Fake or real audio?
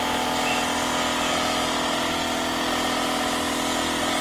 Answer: real